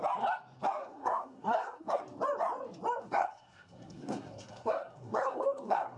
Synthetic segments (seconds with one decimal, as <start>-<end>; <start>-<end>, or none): 0.8-2.0; 3.0-6.0